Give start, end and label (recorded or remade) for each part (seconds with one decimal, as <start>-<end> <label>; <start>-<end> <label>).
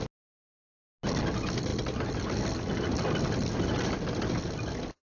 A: 0.0-5.1 recorded